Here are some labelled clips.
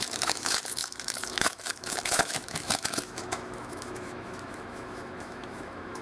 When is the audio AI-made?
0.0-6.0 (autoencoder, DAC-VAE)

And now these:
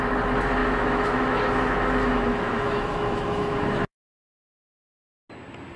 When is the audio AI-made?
0.6-4.1 (autoencoder, DAC-VAE)

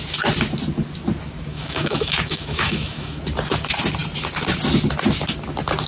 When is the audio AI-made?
1.5-3.2 (autoencoder, DAC-VAE)

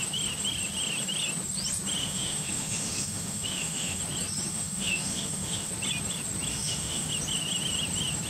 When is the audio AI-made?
2.0-4.0 (autoencoder, DAC-VAE); 4.5-5.7; 6.5-7.1